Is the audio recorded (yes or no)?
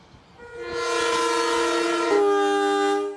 yes